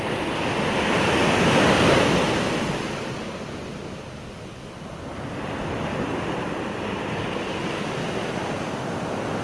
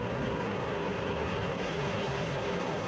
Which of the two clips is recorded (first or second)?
first